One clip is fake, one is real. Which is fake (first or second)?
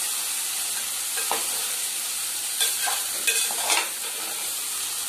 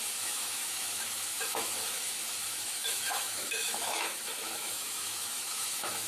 second